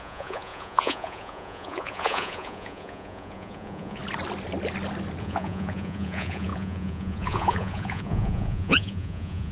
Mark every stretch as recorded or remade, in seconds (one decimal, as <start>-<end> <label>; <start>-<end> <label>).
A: 0.0-4.0 remade; 4.0-5.2 recorded; 5.2-9.5 remade